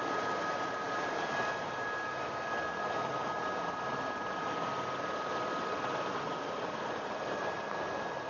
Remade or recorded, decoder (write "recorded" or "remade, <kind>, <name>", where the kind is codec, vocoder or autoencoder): recorded